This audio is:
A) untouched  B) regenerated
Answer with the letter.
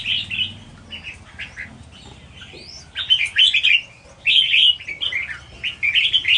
A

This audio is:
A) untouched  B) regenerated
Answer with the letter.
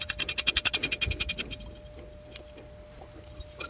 A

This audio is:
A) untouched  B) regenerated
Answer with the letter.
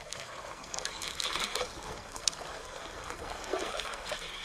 B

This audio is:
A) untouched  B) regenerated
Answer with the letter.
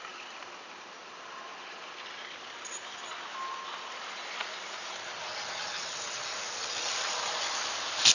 A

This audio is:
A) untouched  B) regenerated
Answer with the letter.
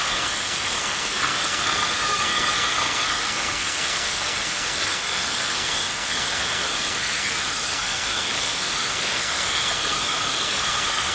B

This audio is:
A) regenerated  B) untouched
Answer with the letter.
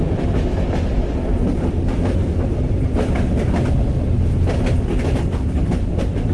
B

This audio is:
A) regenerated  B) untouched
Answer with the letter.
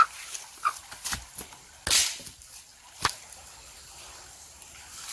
B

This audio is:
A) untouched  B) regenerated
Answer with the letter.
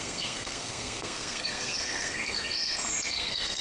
B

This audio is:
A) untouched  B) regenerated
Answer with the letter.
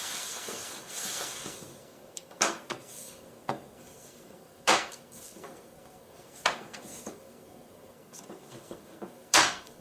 B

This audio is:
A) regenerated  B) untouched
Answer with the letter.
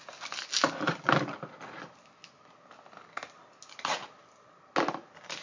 B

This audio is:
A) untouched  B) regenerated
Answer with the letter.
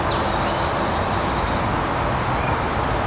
A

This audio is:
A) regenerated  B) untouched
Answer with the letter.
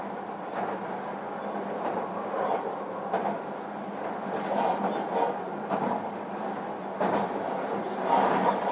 B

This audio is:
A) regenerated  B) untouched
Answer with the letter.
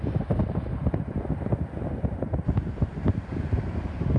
B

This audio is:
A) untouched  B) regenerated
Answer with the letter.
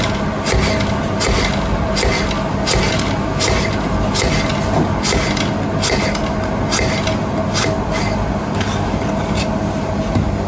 A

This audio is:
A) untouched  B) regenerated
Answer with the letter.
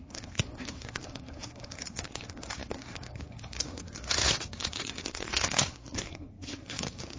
B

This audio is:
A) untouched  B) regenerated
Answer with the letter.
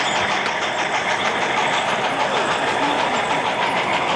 A